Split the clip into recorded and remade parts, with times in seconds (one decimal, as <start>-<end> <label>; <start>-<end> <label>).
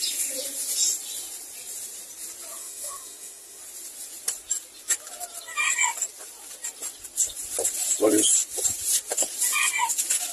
0.0-2.6 recorded; 2.6-3.6 remade; 3.6-10.3 recorded